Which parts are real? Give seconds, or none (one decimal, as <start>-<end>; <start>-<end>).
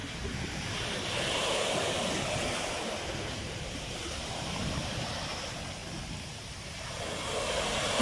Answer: 4.8-8.0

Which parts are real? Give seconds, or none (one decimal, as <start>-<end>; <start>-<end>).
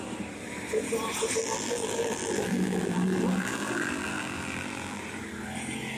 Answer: 0.0-1.4; 5.0-6.0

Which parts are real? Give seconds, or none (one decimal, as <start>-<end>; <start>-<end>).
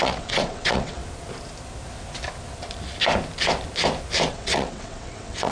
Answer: 1.0-4.3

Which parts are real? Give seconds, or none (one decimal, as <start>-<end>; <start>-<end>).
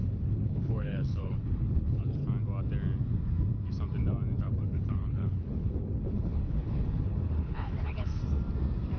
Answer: 2.2-4.4; 8.2-9.0